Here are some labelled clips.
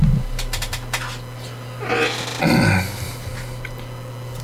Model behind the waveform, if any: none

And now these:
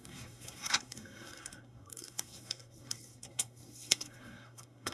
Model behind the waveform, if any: codec, SNAC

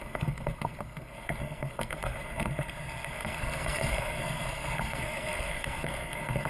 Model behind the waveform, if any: codec, SNAC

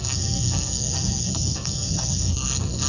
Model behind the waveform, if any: codec, SNAC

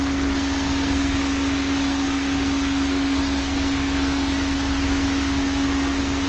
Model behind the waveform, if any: codec, SNAC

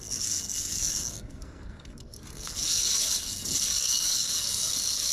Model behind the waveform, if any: codec, SNAC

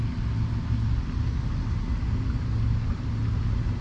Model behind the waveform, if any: none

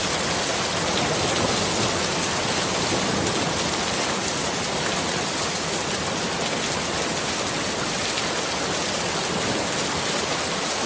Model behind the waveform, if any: none